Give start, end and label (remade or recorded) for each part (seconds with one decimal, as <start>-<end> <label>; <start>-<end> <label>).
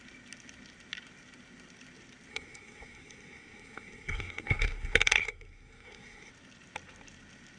0.0-2.3 recorded; 2.3-6.3 remade; 6.3-7.6 recorded